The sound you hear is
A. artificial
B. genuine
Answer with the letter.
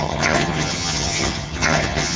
A